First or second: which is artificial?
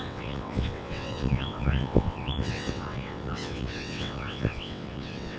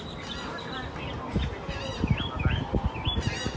first